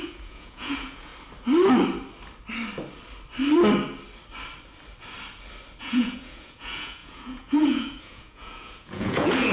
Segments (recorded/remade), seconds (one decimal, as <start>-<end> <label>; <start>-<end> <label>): 0.0-1.1 remade; 1.1-5.8 recorded; 5.8-9.5 remade